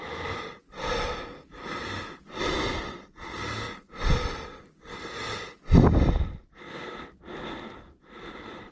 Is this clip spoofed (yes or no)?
no